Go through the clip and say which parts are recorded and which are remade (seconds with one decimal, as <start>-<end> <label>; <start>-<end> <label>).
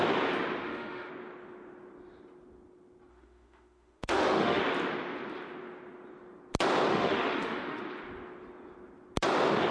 0.0-0.6 recorded; 0.6-1.1 remade; 1.1-3.1 recorded; 3.1-4.6 remade; 4.6-6.9 recorded; 6.9-7.8 remade; 7.8-9.7 recorded